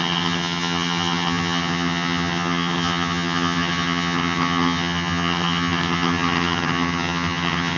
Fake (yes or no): yes